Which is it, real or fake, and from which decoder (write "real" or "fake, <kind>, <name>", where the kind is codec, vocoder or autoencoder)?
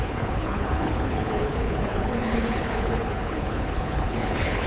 fake, codec, HILCodec